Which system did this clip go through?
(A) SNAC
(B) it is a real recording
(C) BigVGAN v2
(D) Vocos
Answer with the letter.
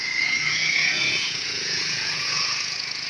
D